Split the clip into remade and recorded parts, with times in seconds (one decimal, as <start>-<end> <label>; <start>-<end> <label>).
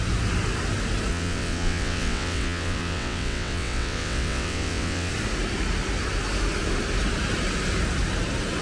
0.0-1.1 recorded; 1.1-5.1 remade; 5.1-8.6 recorded